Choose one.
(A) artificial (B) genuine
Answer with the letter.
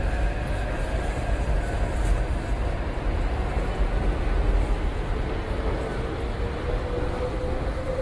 B